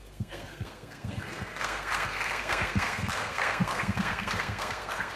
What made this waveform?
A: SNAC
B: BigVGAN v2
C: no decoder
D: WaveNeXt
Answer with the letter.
A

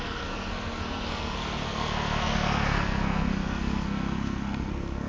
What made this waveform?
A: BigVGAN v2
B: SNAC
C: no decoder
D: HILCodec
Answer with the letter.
B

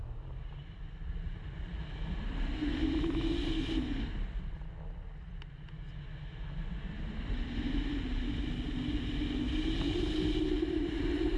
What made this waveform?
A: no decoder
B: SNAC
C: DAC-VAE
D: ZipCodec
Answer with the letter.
A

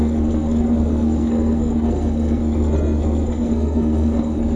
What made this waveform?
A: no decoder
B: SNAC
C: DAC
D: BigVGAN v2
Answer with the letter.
B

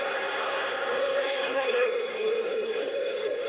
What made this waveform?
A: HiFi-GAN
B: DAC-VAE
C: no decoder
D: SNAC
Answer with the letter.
D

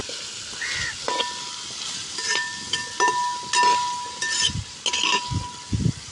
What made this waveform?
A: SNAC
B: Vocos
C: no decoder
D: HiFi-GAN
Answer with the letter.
C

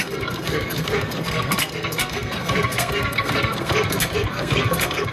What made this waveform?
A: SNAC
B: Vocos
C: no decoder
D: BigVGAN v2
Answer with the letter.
A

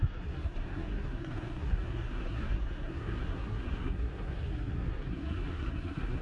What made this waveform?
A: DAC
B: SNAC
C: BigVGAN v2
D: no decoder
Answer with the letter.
B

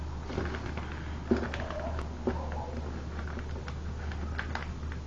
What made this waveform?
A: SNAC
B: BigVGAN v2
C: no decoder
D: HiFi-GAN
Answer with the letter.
C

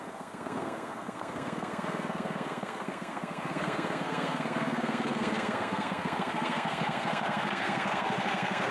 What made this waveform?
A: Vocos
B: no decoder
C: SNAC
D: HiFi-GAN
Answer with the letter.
C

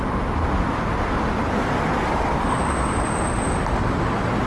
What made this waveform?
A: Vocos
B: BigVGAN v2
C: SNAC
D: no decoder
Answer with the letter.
D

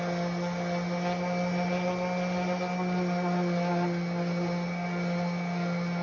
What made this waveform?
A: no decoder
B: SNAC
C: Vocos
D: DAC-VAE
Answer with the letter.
A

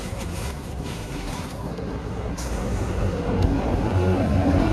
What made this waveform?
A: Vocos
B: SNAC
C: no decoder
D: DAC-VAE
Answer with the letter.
B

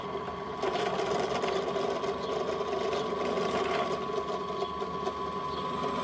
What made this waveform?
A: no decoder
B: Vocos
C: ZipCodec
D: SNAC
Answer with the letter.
A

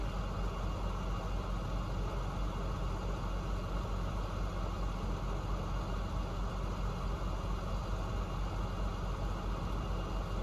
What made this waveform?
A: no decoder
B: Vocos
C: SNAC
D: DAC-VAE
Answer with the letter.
A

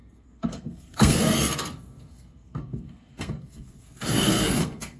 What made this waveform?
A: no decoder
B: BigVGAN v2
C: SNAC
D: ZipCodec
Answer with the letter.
C